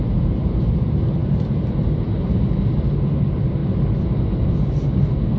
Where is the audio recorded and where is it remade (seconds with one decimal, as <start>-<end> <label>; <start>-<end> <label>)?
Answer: 0.0-5.4 recorded